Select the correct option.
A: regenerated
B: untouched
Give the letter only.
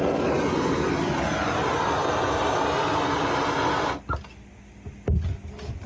B